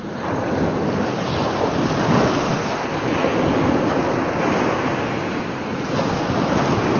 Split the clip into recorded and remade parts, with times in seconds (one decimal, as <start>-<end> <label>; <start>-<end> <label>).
0.0-7.0 recorded